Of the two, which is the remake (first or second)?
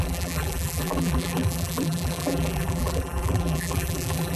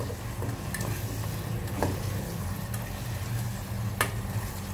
first